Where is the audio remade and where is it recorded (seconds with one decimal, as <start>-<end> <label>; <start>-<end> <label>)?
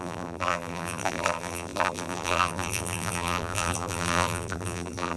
0.0-5.2 remade